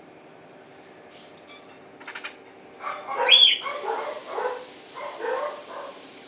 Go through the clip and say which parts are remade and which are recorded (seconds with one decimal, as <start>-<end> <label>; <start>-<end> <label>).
0.0-0.7 remade; 0.7-3.2 recorded; 3.2-4.2 remade; 4.2-5.0 recorded; 5.0-6.3 remade